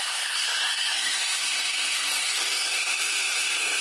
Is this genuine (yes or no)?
no